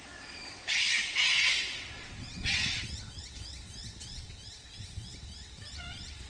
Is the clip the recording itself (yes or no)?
no